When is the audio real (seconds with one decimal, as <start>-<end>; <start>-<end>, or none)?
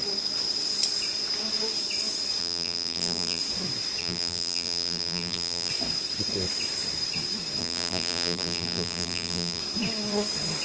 0.0-2.4; 3.4-4.0; 5.7-7.6; 9.6-10.6